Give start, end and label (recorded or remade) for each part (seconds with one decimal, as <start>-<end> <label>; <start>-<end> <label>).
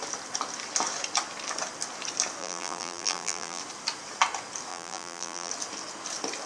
0.0-2.4 recorded; 2.4-3.6 remade; 3.6-4.7 recorded; 4.7-5.5 remade; 5.5-6.5 recorded